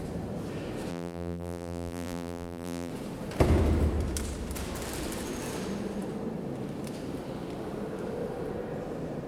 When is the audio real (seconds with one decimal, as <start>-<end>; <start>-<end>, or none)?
0.0-0.9; 2.9-9.3